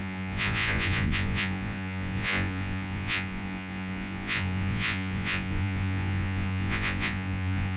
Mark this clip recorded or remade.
remade